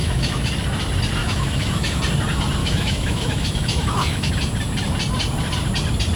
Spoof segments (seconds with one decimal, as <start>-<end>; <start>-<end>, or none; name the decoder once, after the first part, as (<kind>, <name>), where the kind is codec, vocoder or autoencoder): 0.0-0.5 (autoencoder, DAC-VAE); 1.2-2.0; 2.6-4.3